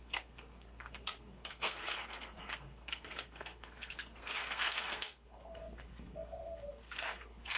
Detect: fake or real fake